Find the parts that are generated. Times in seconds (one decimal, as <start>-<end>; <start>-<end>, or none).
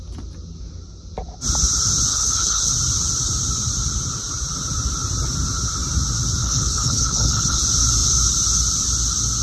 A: 2.1-2.7; 6.4-7.6